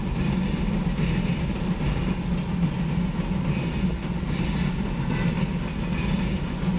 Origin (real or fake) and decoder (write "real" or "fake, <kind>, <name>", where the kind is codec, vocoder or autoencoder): real